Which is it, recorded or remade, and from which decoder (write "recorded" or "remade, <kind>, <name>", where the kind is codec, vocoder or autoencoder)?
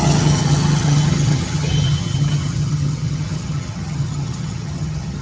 remade, vocoder, HiFi-GAN